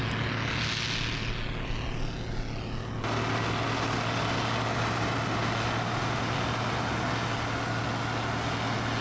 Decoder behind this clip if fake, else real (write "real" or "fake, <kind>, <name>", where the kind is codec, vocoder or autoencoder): real